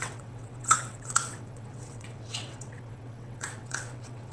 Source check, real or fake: fake